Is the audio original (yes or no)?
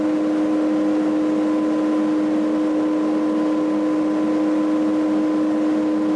yes